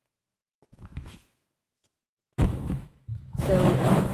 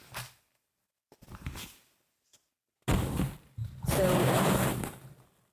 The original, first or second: second